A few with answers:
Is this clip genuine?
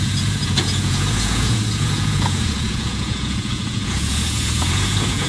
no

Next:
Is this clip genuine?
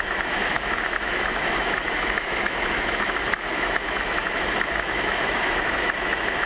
no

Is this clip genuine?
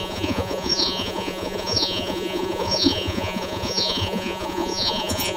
no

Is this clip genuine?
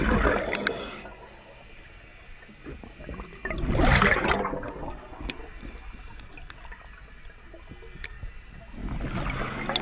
yes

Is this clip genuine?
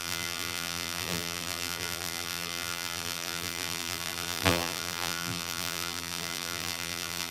no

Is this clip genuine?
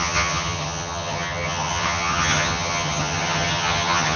no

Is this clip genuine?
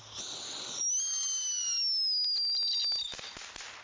yes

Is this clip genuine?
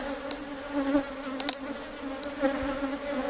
yes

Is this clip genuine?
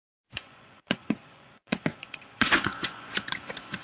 no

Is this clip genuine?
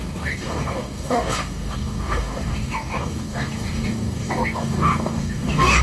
no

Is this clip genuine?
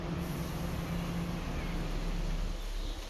yes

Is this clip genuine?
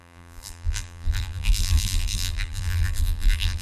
no